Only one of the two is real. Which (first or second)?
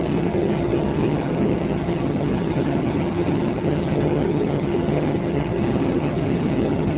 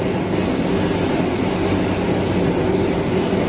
second